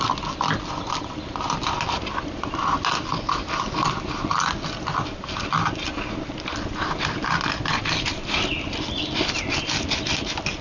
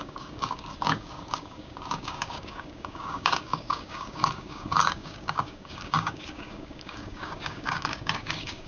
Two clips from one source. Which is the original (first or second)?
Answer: first